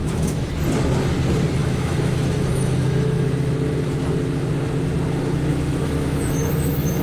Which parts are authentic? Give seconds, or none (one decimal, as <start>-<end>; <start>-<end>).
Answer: 0.5-1.6; 3.5-5.5